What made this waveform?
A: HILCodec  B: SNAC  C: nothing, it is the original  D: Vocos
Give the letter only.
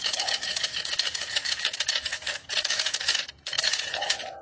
D